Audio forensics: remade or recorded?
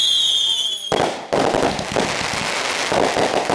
recorded